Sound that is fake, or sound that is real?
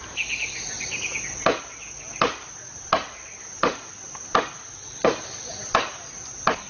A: real